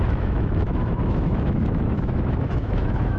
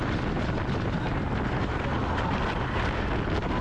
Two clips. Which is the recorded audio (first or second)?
second